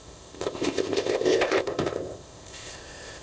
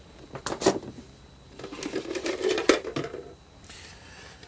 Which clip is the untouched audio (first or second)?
second